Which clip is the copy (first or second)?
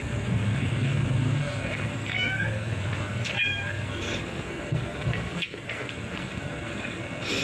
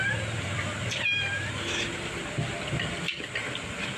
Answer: first